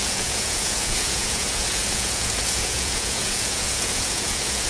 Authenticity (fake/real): fake